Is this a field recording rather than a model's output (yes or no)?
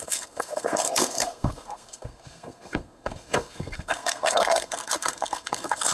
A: no